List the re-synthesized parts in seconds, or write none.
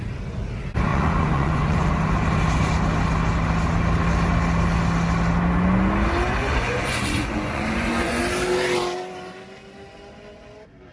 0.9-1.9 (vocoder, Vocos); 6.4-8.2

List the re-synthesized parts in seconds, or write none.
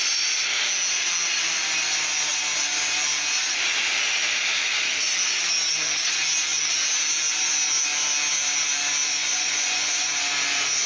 9.2-10.1 (vocoder, Vocos)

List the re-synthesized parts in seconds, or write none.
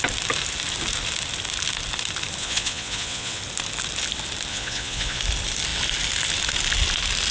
2.4-3.4 (vocoder, Vocos); 4.5-5.2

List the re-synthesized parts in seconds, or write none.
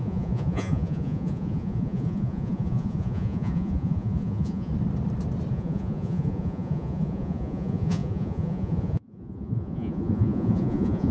0.0-4.7 (vocoder, Vocos); 5.5-11.1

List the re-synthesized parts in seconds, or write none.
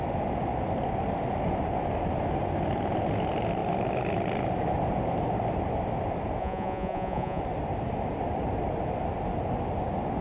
6.4-7.4 (vocoder, Vocos)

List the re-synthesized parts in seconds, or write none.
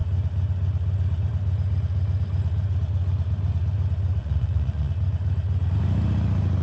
4.2-4.9 (vocoder, Vocos)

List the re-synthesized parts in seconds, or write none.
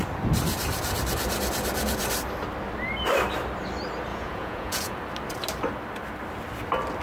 4.1-5.0 (vocoder, Vocos)